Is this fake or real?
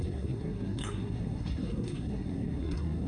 fake